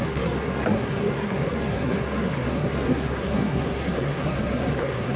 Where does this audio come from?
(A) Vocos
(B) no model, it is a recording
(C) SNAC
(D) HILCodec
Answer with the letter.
C